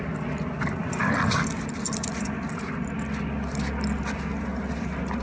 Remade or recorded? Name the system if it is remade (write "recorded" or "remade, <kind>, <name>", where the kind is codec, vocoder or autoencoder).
recorded